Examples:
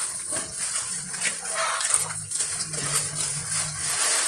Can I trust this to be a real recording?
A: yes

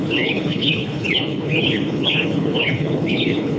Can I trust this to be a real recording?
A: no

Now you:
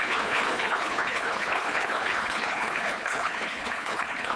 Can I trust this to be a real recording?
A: no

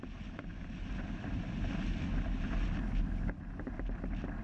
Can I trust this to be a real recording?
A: yes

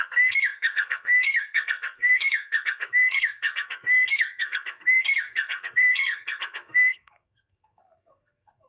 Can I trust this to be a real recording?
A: no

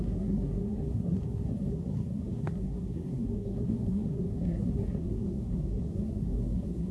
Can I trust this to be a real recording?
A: no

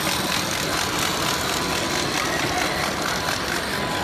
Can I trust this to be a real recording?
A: yes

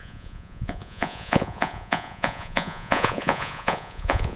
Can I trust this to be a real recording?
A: no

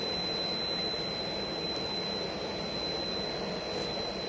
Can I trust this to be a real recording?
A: yes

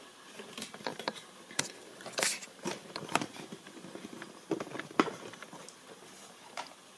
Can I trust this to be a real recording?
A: yes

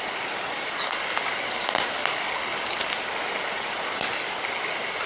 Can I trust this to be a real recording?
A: yes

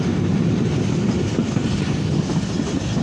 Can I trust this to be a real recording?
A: yes